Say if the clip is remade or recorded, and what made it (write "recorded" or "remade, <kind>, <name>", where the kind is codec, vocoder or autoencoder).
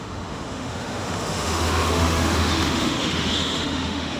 remade, autoencoder, DAC-VAE